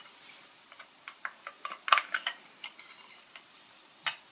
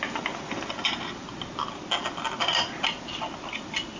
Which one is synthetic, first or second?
first